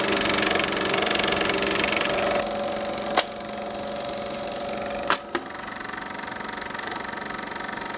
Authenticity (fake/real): real